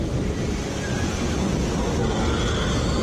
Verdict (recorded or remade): recorded